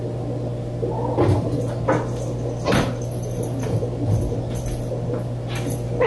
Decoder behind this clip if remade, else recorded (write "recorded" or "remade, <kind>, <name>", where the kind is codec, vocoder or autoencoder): recorded